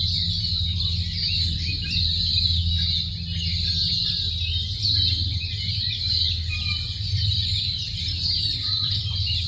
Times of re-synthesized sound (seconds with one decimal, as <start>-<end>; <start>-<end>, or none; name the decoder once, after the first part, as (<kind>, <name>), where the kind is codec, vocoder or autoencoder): 0.0-2.3 (vocoder, BigVGAN v2); 5.1-9.5